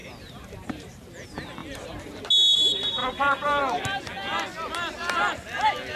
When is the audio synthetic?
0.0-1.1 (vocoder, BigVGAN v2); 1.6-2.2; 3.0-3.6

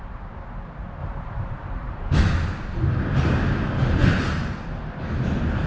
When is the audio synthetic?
1.0-2.2 (vocoder, BigVGAN v2)